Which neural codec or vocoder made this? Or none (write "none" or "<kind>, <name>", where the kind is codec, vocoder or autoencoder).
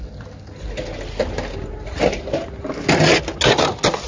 none